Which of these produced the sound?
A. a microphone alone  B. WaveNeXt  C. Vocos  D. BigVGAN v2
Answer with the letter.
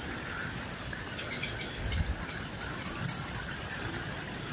A